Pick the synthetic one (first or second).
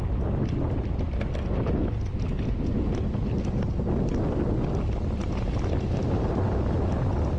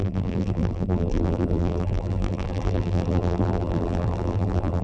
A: second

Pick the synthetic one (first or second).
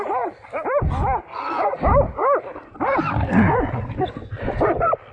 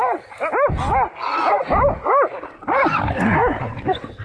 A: first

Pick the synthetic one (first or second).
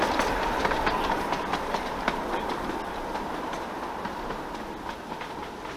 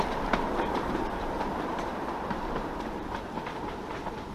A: second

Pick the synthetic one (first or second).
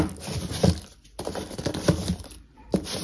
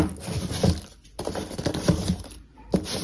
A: first